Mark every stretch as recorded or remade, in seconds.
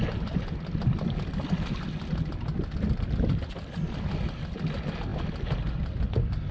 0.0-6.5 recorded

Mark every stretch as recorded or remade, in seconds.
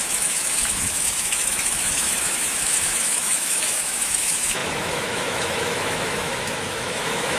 0.0-7.4 remade